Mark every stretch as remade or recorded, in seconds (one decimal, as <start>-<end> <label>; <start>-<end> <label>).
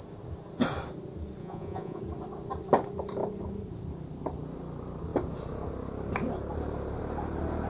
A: 0.0-1.4 recorded; 1.4-2.0 remade; 2.0-7.7 recorded